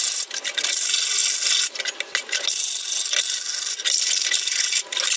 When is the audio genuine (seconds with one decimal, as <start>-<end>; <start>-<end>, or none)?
0.0-5.2